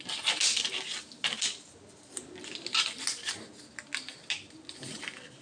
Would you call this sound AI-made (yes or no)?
no